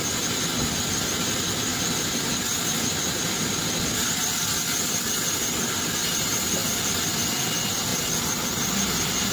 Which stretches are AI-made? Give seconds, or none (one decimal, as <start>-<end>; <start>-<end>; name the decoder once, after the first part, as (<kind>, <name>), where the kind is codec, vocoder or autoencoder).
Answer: 1.7-3.5 (vocoder, BigVGAN v2); 6.6-7.1